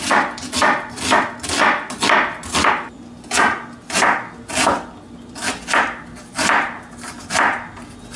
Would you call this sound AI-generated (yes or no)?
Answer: no